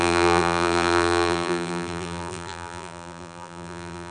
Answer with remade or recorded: remade